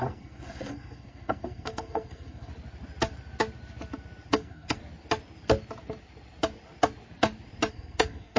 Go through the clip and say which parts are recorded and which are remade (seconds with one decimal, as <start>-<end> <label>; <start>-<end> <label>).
0.0-2.5 remade; 2.5-4.3 recorded; 4.3-4.8 remade; 4.8-7.7 recorded; 7.7-8.4 remade